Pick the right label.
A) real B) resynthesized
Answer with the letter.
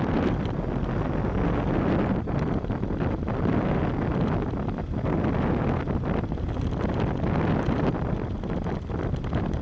A